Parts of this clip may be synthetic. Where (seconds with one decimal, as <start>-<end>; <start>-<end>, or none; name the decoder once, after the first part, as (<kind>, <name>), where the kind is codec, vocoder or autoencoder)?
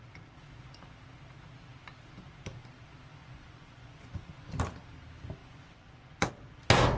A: 3.1-4.3 (vocoder, Vocos); 5.4-6.3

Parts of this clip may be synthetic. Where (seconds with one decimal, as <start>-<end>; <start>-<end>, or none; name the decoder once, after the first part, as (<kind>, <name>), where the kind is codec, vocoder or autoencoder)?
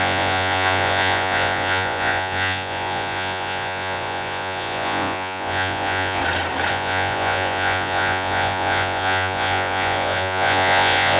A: 0.0-6.2 (vocoder, Vocos); 6.7-11.2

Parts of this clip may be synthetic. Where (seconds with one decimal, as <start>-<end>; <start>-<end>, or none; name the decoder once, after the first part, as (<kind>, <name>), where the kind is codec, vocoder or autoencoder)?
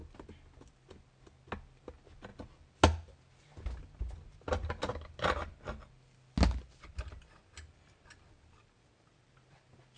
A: none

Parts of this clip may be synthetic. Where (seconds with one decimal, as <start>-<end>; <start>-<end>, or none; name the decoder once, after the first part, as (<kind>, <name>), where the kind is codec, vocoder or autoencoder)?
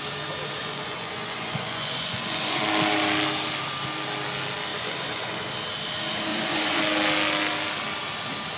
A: 0.6-2.6 (vocoder, Vocos); 4.7-5.5; 6.3-6.8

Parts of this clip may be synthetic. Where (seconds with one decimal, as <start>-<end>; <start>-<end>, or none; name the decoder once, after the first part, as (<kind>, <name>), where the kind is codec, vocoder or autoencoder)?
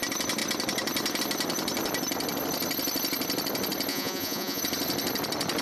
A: 3.9-4.6 (vocoder, Vocos)